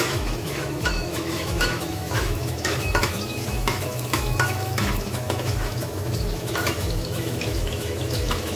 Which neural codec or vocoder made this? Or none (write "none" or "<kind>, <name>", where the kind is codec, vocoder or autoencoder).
autoencoder, DAC-VAE